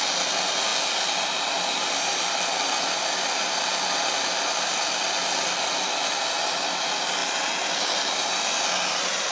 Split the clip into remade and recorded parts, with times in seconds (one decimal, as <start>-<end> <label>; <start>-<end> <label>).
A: 0.0-9.3 recorded